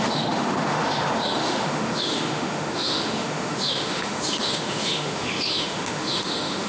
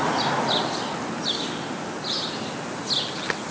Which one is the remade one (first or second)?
first